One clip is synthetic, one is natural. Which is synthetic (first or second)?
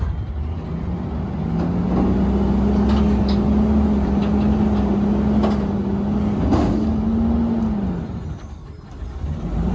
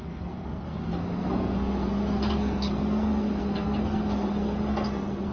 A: second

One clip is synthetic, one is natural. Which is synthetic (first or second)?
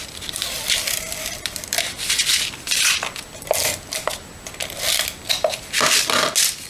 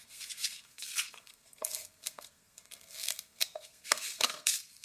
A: second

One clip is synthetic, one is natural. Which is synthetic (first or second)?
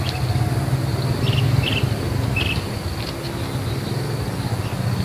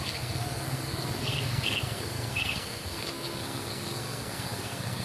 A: second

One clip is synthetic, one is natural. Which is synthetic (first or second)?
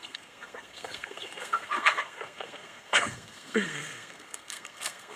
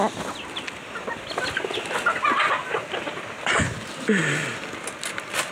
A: first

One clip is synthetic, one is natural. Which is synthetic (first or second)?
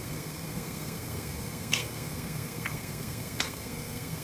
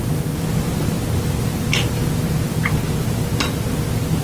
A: first